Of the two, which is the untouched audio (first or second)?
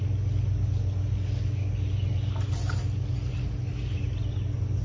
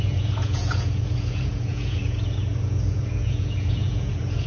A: first